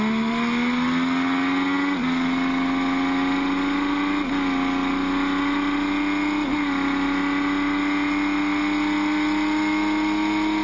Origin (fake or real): real